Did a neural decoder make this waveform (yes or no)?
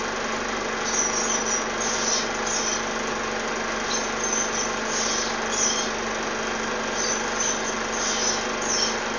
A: no